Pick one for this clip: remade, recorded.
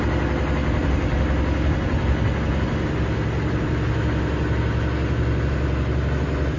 recorded